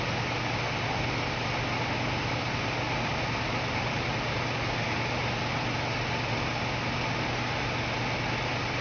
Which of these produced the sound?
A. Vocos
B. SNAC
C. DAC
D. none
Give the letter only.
D